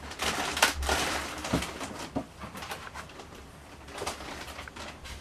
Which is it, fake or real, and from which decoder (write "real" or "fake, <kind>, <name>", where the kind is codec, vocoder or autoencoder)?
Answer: fake, vocoder, BigVGAN v2